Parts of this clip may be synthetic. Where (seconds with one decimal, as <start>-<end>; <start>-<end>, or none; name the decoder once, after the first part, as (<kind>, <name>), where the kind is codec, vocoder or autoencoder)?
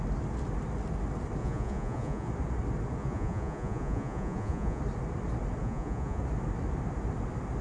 1.4-2.3 (vocoder, Vocos); 3.0-4.8; 5.6-6.2